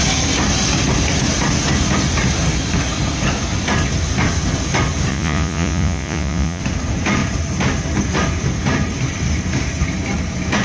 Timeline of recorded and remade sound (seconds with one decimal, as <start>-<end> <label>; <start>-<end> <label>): 0.0-5.1 recorded; 5.1-6.6 remade; 6.6-10.6 recorded